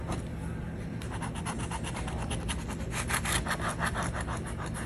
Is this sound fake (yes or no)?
no